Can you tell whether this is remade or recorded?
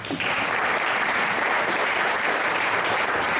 remade